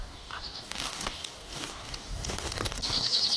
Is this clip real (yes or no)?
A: no